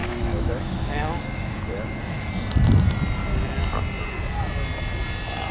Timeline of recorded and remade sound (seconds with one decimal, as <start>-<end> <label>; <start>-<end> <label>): 0.0-2.3 remade; 2.3-5.5 recorded